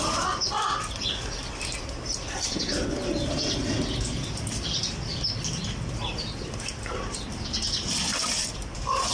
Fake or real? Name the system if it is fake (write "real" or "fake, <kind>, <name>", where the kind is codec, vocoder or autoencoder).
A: real